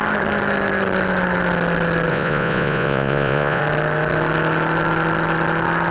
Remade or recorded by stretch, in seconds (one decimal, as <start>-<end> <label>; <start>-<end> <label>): 0.0-2.1 recorded; 2.1-3.6 remade; 3.6-5.9 recorded